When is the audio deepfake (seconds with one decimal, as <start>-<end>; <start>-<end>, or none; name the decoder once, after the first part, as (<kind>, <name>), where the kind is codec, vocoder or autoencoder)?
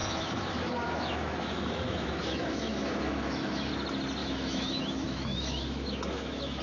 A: 0.0-3.7 (autoencoder, DAC-VAE); 4.2-6.6